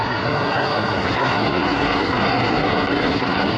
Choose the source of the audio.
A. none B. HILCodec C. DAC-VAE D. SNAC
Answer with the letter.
D